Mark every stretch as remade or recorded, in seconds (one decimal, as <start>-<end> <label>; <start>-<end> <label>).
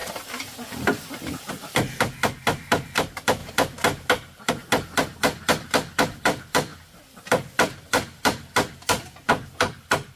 0.0-1.5 remade; 1.5-10.2 recorded